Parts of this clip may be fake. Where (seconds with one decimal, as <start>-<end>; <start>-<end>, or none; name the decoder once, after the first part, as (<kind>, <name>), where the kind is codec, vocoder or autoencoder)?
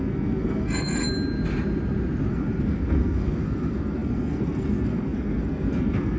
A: 0.0-1.0 (codec, SNAC); 2.3-6.2